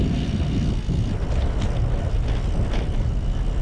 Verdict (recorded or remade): recorded